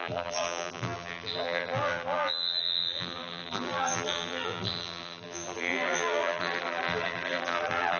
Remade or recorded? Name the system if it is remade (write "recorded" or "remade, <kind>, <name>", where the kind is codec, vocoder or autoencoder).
remade, vocoder, BigVGAN v2